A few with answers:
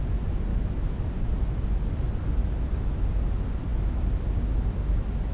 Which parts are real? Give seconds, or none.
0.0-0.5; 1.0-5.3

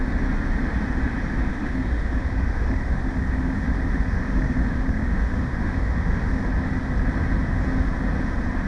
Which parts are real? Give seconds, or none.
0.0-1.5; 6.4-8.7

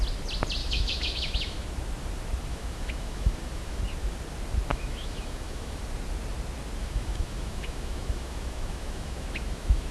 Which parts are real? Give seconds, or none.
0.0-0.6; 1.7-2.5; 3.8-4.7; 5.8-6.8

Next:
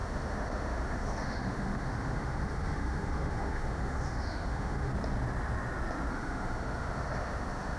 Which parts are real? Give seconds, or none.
4.9-6.1

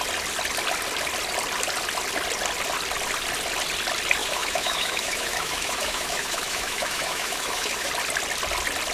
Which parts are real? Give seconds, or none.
0.0-4.2; 7.9-8.9

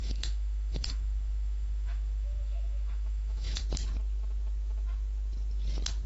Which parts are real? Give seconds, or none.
3.6-6.1